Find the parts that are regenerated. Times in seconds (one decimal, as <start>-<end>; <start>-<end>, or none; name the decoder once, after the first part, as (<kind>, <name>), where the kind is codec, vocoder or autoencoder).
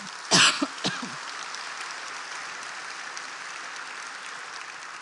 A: none